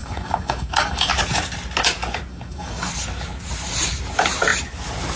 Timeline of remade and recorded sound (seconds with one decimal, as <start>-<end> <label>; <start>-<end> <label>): 0.0-1.1 remade; 1.1-2.3 recorded; 2.3-2.9 remade; 2.9-5.2 recorded